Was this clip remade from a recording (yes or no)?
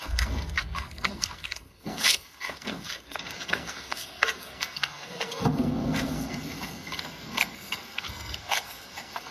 yes